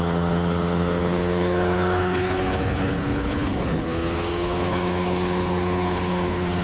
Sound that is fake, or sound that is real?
fake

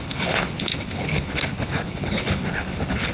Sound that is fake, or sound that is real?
fake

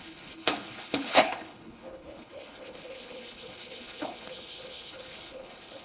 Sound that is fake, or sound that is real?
fake